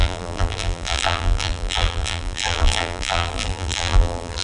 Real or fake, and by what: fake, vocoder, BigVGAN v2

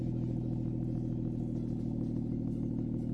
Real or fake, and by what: real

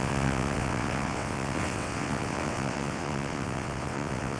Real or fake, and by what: fake, vocoder, WaveNeXt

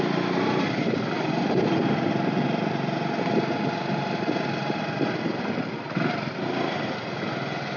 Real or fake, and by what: real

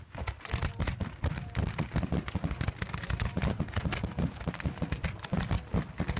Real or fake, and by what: real